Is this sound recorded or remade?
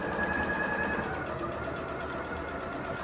recorded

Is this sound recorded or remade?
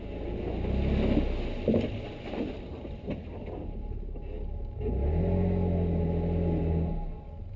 recorded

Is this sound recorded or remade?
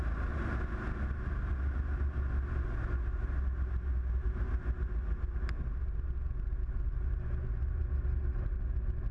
recorded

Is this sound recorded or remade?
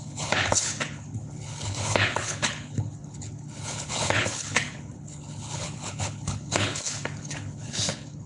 remade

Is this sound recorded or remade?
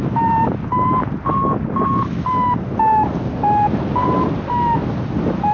recorded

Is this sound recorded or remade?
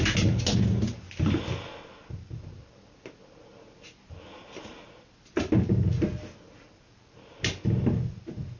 recorded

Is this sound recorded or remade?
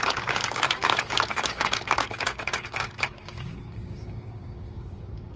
remade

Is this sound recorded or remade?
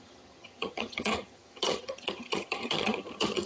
remade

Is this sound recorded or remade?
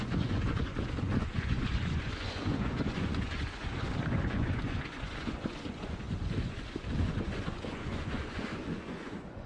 remade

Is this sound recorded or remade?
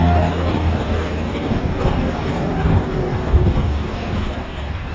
remade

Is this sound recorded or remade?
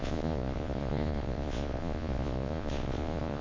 remade